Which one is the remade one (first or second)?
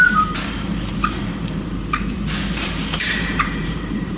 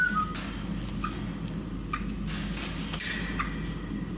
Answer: first